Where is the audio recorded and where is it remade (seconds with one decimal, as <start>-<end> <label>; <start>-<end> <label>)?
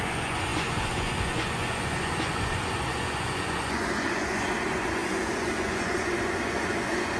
0.0-7.2 remade